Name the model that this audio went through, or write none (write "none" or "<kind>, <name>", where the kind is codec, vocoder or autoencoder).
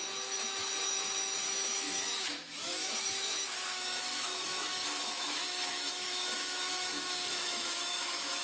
autoencoder, DAC-VAE